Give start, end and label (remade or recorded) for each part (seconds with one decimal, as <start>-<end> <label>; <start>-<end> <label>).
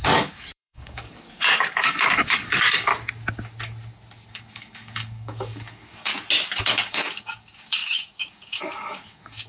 0.0-2.9 remade; 2.9-4.3 recorded; 4.3-6.1 remade; 6.1-6.6 recorded; 6.6-9.5 remade